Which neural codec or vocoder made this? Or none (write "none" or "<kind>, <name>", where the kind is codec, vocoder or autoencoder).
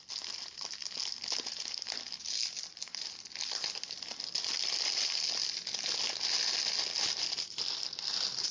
none